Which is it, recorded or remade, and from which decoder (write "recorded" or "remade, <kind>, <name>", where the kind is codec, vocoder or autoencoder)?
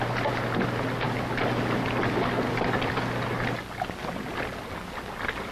recorded